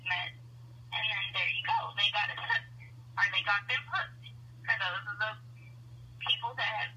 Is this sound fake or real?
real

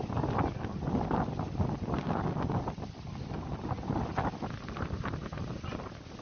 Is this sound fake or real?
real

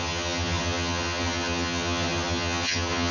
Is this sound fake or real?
fake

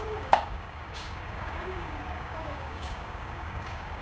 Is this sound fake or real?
fake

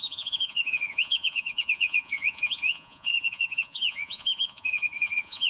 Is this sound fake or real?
fake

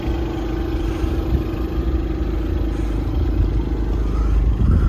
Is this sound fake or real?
real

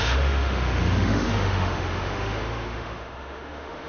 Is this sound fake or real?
fake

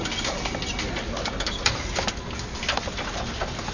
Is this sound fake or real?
real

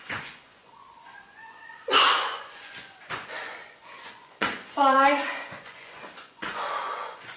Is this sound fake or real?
fake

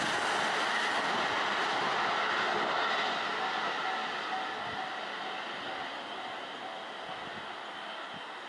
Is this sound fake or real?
real